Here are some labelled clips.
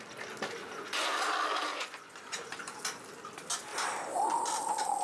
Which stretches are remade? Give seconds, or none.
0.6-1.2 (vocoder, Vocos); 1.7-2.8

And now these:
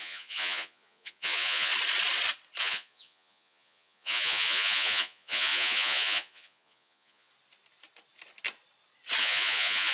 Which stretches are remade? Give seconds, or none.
0.0-1.7 (vocoder, Vocos); 2.6-7.3; 9.2-9.9

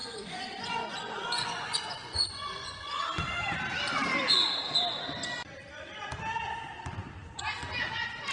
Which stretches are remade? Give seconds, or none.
0.0-3.0 (vocoder, Vocos)

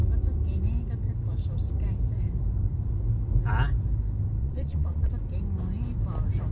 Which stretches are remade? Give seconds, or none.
4.4-5.1 (vocoder, Vocos)